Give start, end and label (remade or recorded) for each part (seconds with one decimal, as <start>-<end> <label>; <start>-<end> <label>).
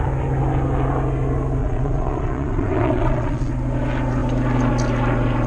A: 0.0-1.6 recorded; 1.6-3.5 remade; 3.5-5.5 recorded